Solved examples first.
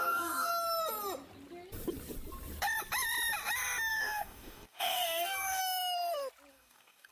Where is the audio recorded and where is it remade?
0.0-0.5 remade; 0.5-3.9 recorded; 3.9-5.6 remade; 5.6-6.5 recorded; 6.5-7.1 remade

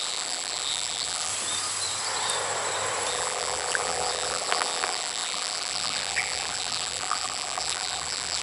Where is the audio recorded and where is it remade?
0.0-1.3 remade; 1.3-3.1 recorded; 3.1-8.4 remade

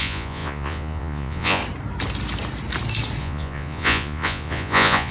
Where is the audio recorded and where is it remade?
0.0-1.6 remade; 1.6-3.2 recorded; 3.2-5.1 remade